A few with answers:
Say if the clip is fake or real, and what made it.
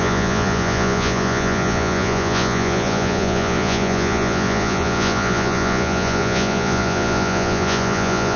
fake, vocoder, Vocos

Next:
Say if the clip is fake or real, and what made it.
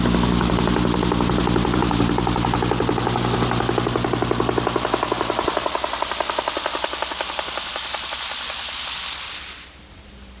real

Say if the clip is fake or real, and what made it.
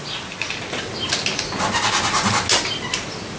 real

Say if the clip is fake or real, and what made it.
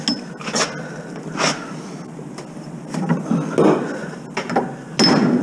real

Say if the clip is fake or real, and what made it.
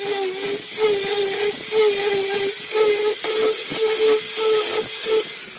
real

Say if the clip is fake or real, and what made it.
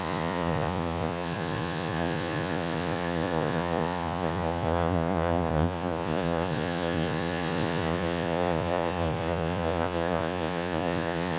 fake, vocoder, Vocos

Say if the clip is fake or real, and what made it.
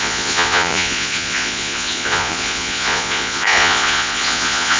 fake, vocoder, Vocos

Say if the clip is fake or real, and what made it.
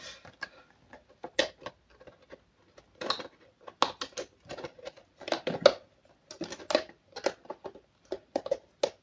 real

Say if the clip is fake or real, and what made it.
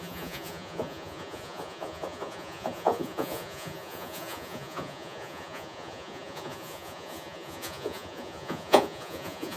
fake, vocoder, Vocos